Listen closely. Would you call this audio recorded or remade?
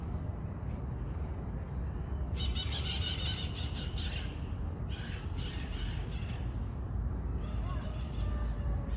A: recorded